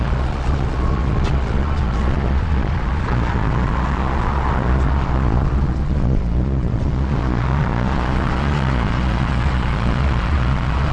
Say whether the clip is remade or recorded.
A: remade